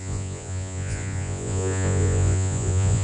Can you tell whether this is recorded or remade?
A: remade